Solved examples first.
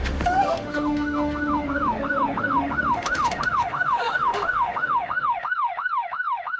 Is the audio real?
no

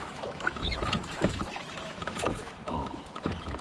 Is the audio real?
no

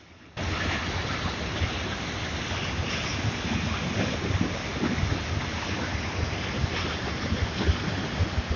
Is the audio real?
yes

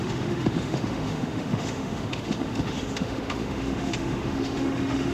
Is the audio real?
no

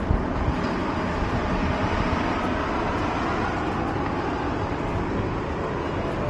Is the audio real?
yes